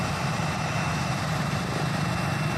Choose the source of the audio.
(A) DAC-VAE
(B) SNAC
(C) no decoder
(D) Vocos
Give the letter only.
C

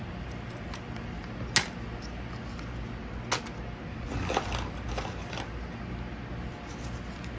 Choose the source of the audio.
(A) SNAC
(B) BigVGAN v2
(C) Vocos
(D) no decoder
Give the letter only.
D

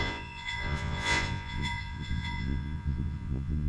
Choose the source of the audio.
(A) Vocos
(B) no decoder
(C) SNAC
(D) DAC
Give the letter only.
A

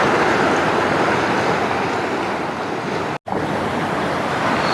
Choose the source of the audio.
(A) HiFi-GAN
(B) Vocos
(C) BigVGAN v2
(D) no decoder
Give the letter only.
D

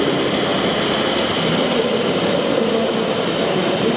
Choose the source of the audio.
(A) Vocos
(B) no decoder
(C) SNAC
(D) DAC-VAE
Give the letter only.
B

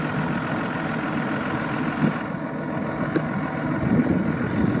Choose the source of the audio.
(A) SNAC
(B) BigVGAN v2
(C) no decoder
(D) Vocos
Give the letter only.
C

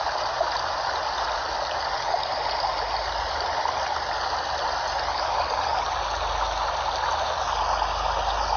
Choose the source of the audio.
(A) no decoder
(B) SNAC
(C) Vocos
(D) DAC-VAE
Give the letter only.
A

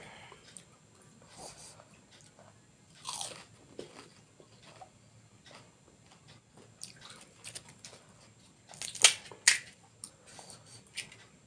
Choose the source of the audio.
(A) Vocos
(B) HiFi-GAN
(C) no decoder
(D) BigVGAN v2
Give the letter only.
C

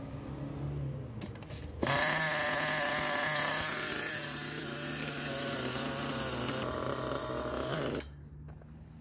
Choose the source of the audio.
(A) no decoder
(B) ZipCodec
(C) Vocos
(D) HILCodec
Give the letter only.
A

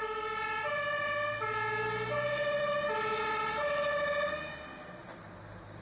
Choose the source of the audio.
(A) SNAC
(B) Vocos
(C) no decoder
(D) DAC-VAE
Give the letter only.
C